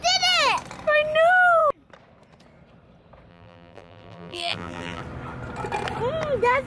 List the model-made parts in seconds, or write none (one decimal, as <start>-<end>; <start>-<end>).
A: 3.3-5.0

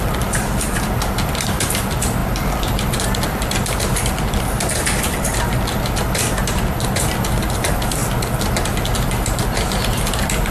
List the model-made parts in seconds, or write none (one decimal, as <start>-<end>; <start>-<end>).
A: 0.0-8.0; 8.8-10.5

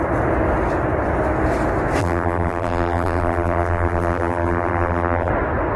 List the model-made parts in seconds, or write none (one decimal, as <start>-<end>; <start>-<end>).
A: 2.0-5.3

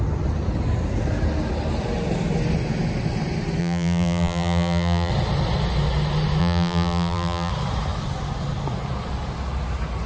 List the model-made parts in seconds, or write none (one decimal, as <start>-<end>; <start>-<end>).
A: 3.6-5.1; 6.4-7.5

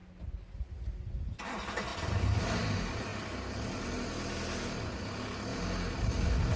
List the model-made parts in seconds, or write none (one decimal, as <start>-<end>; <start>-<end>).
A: 1.9-2.4; 3.1-4.0